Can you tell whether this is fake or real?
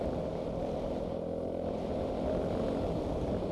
real